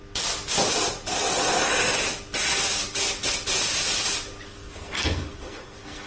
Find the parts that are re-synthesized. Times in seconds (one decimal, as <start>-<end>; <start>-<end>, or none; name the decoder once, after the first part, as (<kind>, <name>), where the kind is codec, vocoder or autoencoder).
4.5-6.1 (codec, SNAC)

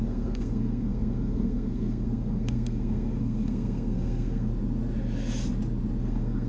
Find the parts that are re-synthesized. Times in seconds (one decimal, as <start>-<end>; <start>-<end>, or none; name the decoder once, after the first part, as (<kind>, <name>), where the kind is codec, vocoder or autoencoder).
0.0-4.5 (codec, SNAC); 6.0-6.5

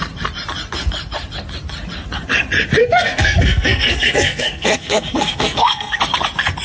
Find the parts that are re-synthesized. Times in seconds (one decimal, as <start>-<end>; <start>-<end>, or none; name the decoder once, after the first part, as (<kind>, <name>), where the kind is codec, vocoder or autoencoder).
2.8-6.0 (codec, SNAC)

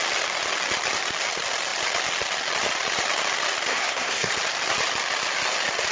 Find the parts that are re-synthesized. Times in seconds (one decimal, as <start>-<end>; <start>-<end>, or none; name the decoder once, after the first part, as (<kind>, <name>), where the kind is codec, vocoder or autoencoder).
3.7-4.3 (codec, SNAC)

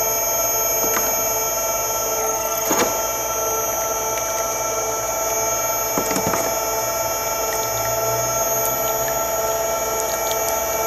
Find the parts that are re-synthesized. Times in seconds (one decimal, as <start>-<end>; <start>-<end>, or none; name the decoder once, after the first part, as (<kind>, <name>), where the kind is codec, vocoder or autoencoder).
2.2-2.8 (codec, SNAC)